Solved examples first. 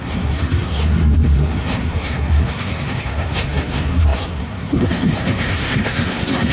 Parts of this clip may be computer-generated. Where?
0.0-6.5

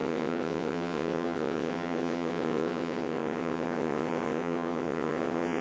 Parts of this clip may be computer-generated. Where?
0.0-5.6

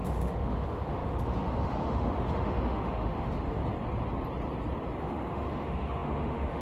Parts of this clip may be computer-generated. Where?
0.0-3.6; 5.0-6.6

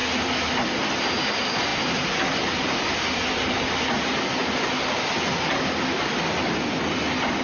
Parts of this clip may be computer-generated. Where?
none

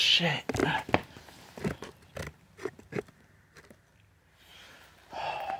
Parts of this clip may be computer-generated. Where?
4.5-5.6

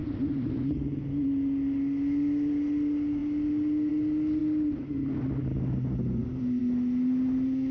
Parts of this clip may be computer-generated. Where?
0.0-1.0